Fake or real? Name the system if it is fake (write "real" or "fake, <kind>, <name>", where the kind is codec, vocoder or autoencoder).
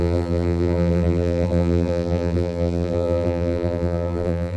fake, vocoder, BigVGAN v2